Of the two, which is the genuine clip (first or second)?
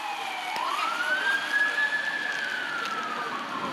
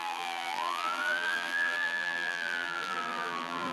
first